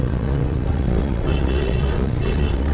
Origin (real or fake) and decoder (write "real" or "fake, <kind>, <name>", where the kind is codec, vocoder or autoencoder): fake, vocoder, WaveNeXt